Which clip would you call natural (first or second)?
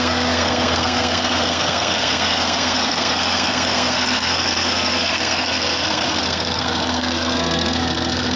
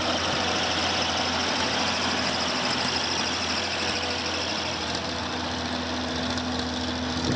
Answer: second